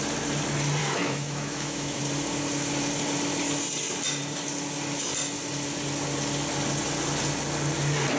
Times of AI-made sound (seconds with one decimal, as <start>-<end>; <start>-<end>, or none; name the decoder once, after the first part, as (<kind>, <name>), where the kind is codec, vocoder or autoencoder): 0.8-2.0 (autoencoder, DAC-VAE)